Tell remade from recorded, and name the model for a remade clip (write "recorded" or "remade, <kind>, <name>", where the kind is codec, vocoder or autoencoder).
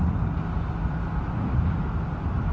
recorded